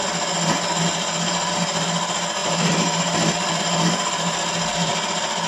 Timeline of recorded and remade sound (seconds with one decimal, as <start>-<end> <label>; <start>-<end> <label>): 0.0-4.9 recorded; 4.9-5.5 remade